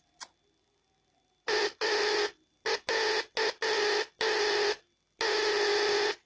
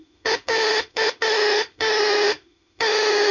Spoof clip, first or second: second